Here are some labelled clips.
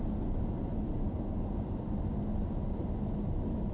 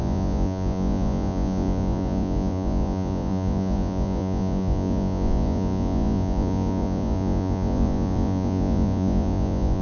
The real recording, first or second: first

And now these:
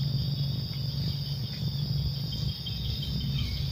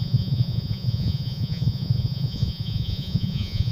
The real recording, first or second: first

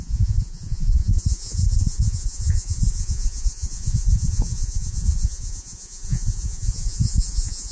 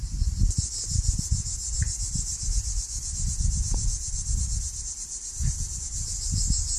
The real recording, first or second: second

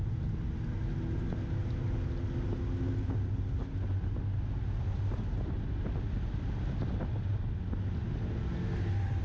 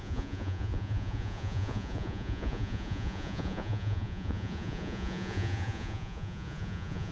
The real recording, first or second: first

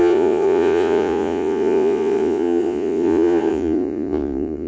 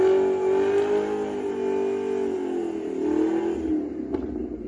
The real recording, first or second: second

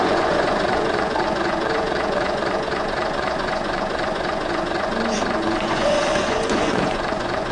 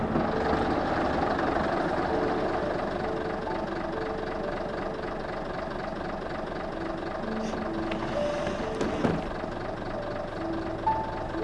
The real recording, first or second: second